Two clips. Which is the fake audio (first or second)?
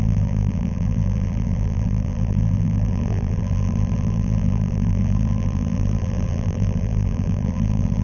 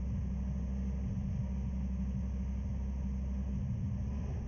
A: first